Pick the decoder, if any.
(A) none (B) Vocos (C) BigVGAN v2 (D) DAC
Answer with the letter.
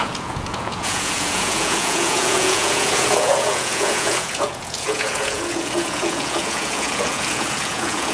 B